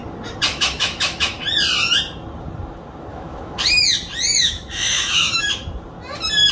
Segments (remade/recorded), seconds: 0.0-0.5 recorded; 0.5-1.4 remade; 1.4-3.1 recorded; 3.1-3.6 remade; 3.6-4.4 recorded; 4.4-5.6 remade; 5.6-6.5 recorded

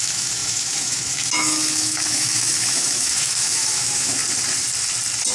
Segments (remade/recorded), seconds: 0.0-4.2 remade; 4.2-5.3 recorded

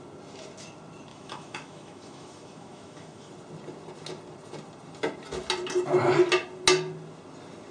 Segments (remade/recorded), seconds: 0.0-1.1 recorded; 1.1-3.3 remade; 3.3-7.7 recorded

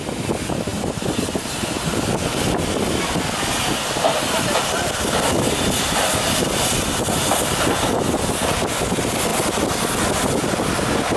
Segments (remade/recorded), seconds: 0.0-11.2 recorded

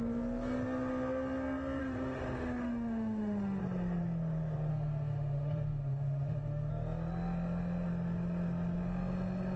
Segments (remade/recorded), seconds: 0.0-1.8 recorded; 1.8-3.6 remade; 3.6-4.7 recorded; 4.7-6.7 remade; 6.7-9.6 recorded

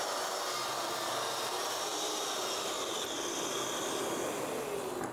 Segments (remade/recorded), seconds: 0.0-5.1 recorded

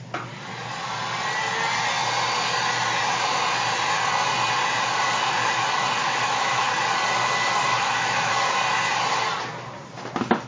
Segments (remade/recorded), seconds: 0.0-6.0 recorded; 6.0-6.7 remade; 6.7-7.7 recorded; 7.7-8.3 remade; 8.3-10.5 recorded

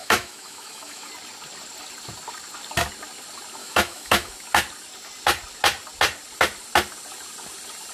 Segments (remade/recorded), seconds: 0.0-1.1 remade; 1.1-3.6 recorded; 3.6-4.3 remade; 4.3-7.9 recorded